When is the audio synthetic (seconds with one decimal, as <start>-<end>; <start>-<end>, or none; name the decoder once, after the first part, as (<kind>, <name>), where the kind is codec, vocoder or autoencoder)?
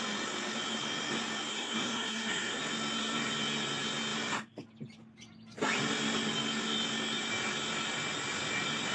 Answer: 1.5-2.6 (codec, SNAC)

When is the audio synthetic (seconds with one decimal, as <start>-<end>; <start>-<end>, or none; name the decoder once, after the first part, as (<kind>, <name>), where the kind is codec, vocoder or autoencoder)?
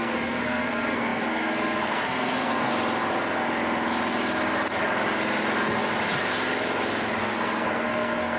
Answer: 0.0-2.7 (codec, SNAC); 7.2-8.4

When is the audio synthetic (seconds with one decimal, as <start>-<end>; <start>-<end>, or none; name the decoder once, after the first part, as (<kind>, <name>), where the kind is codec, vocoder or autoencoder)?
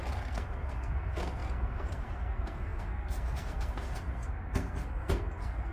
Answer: 0.0-5.7 (codec, SNAC)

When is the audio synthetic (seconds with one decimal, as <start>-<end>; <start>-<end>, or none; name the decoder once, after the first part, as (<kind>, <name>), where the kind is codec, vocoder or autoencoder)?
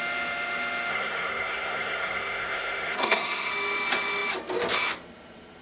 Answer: 0.9-3.5 (codec, SNAC)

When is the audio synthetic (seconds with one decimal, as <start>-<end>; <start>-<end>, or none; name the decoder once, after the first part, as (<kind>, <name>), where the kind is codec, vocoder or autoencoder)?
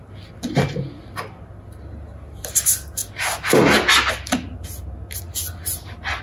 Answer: none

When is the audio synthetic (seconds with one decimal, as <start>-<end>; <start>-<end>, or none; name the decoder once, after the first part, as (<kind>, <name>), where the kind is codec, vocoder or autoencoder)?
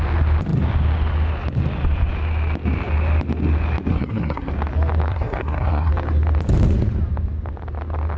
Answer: 3.9-4.5 (codec, SNAC); 5.1-5.9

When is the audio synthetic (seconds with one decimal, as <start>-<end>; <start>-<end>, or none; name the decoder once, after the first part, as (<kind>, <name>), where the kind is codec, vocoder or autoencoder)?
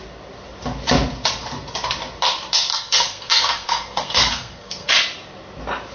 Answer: 2.7-4.9 (codec, SNAC)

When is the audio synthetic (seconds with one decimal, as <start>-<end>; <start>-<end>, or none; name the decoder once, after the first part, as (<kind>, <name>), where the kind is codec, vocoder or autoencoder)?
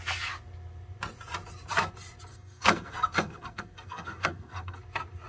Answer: 2.3-4.8 (codec, SNAC)